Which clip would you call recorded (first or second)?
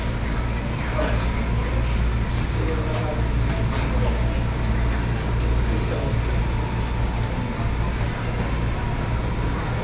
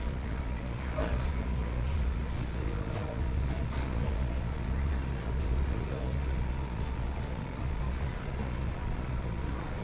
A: first